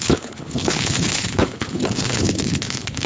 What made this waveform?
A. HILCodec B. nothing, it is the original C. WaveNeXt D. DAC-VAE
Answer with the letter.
A